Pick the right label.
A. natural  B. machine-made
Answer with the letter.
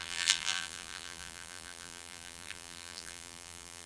B